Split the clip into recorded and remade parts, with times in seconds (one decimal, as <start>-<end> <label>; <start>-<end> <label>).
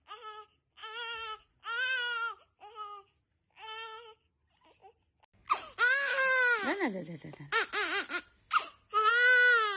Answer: 0.0-0.8 recorded; 0.8-1.4 remade; 1.4-9.8 recorded